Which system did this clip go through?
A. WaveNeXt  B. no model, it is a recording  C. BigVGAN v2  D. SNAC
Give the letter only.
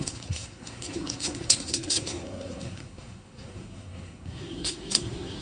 D